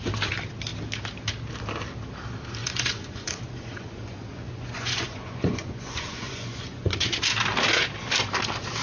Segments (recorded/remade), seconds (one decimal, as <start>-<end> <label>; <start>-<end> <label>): 0.0-2.6 recorded; 2.6-7.2 remade; 7.2-8.8 recorded